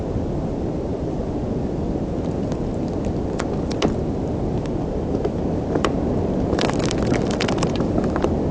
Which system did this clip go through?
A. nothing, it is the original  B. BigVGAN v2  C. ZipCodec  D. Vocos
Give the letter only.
A